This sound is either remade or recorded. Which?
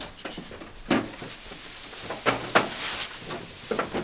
recorded